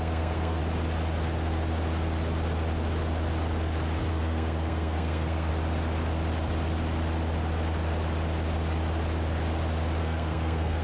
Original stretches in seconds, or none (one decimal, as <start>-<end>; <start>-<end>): 0.6-4.1; 5.5-10.0